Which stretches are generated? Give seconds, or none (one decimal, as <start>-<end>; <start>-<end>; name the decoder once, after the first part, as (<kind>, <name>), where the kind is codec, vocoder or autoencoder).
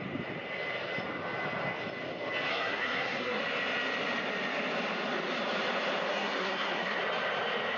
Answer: 2.5-3.4 (codec, SNAC); 6.1-7.0